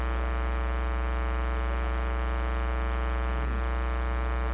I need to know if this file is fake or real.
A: real